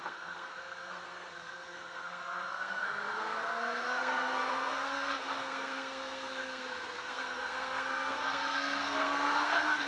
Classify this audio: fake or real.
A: fake